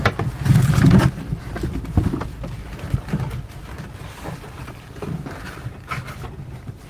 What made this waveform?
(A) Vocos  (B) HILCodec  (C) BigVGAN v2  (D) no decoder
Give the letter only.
D